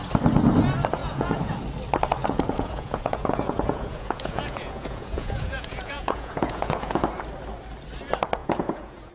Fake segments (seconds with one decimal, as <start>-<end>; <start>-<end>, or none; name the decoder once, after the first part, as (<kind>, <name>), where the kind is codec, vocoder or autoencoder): 1.0-1.5 (vocoder, Vocos); 2.2-7.0; 8.4-9.1